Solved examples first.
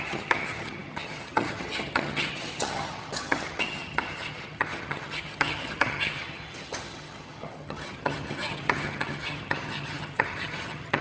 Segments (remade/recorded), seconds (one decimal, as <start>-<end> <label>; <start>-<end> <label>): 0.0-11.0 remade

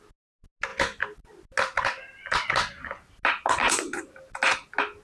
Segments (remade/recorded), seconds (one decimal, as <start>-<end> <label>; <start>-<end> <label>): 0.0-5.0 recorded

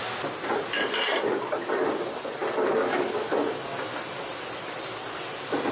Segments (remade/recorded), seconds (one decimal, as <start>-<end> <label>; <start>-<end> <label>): 0.0-5.7 recorded